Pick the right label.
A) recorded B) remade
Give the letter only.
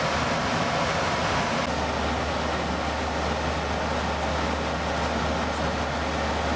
A